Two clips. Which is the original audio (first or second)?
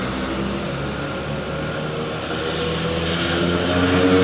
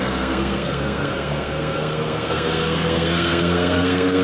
first